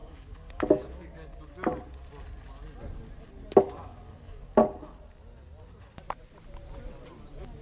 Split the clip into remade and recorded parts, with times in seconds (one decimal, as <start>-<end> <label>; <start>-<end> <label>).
0.0-1.3 remade; 1.3-3.6 recorded; 3.6-4.6 remade; 4.6-7.6 recorded